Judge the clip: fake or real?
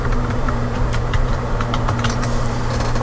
fake